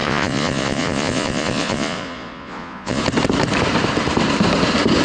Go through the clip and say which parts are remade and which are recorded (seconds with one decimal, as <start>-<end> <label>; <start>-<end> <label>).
0.0-3.0 remade; 3.0-5.0 recorded

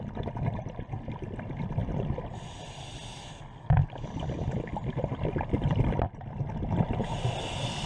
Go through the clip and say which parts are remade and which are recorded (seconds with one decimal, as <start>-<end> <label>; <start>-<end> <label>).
0.0-7.9 recorded

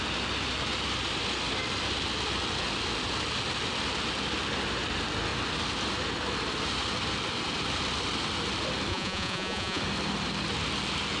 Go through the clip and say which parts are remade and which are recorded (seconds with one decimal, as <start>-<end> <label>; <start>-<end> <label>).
0.0-8.9 recorded; 8.9-9.8 remade; 9.8-11.2 recorded

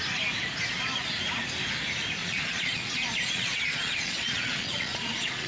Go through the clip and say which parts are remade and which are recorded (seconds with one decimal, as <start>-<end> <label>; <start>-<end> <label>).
0.0-2.2 recorded; 2.2-5.5 remade

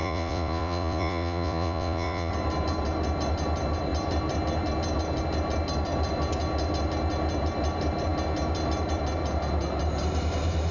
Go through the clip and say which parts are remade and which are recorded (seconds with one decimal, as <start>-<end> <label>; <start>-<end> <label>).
0.0-2.3 remade; 2.3-10.7 recorded

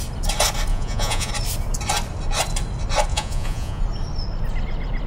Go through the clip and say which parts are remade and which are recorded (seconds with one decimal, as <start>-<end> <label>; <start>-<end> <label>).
0.0-0.7 recorded; 0.7-1.3 remade; 1.3-3.1 recorded; 3.1-3.8 remade; 3.8-5.1 recorded